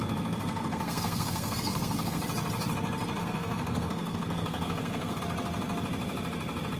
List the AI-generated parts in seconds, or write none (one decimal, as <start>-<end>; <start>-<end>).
0.0-2.2; 3.2-5.2